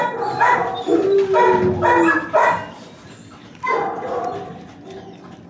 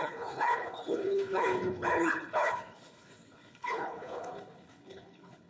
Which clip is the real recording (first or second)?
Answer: first